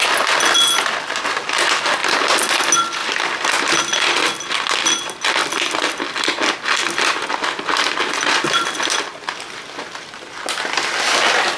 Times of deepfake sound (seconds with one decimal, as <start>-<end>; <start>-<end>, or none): none